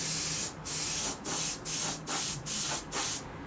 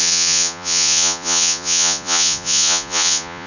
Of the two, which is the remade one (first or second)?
second